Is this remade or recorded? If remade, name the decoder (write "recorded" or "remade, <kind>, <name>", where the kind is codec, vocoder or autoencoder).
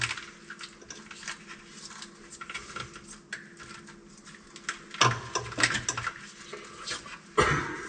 recorded